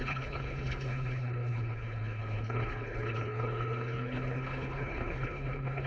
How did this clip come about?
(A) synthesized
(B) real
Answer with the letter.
A